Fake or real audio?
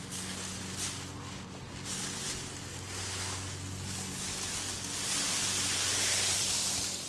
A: real